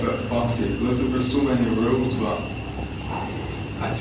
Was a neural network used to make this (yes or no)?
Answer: no